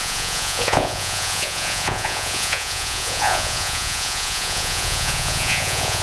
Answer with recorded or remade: remade